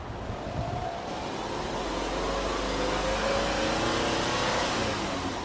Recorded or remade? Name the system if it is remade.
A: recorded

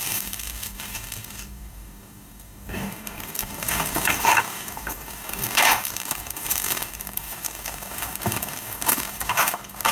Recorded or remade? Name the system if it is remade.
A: remade, codec, DAC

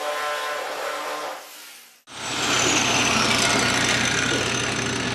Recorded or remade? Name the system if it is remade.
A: recorded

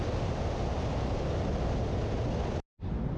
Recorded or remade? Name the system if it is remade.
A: recorded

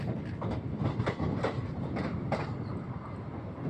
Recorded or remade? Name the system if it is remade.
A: recorded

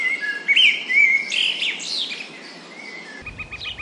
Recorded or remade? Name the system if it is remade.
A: recorded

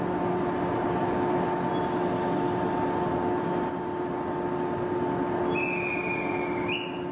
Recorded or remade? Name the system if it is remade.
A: recorded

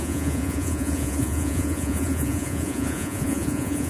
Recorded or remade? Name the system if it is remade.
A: remade, vocoder, Vocos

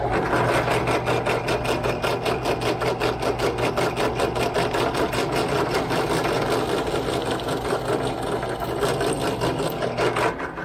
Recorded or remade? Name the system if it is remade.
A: recorded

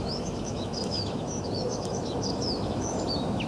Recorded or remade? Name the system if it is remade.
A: remade, autoencoder, DAC-VAE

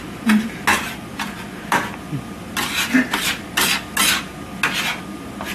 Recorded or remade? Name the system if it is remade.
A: recorded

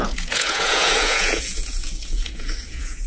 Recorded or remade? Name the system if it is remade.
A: remade, vocoder, Vocos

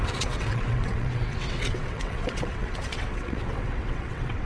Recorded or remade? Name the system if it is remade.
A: remade, vocoder, WaveNeXt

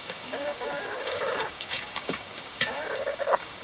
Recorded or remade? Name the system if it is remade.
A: remade, codec, DAC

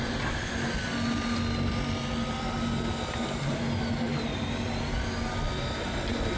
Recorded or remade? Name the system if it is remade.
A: recorded